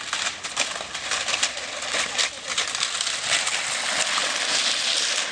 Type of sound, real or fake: real